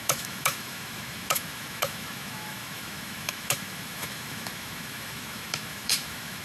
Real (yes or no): no